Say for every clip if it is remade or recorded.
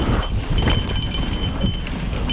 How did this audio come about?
recorded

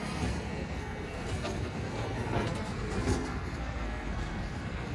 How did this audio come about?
remade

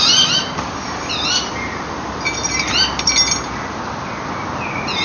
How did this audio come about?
recorded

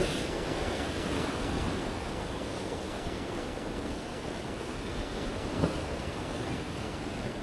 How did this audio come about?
remade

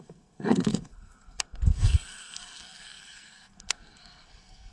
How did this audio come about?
remade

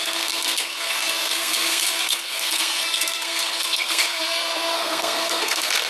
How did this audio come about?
remade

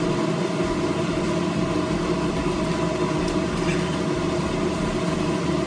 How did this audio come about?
recorded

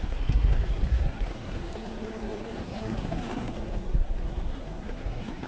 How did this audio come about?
remade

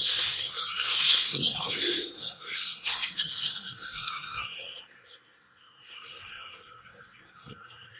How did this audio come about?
remade